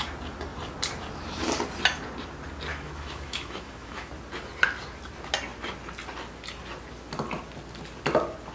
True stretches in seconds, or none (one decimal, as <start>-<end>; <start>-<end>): 0.0-2.7; 4.1-8.5